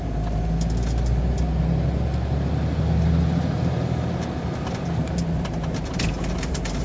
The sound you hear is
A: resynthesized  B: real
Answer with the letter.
B